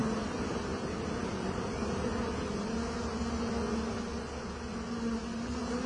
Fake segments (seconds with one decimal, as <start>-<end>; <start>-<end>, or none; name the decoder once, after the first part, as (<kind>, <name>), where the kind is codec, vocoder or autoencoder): none